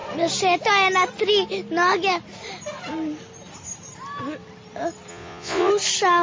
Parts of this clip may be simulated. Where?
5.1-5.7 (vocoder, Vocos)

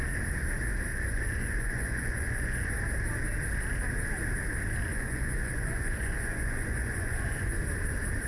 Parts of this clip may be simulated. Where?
0.9-2.7 (vocoder, Vocos); 4.9-7.6

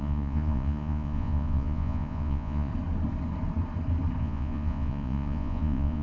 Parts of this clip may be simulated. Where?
0.0-2.7 (vocoder, Vocos); 4.2-6.0

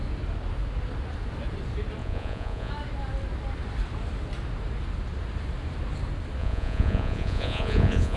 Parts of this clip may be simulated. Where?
2.0-2.7 (vocoder, Vocos); 6.4-8.2

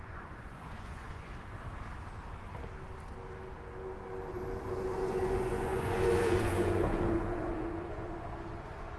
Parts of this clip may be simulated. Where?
0.0-1.3 (vocoder, Vocos); 4.7-9.0